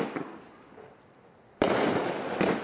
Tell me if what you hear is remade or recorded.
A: recorded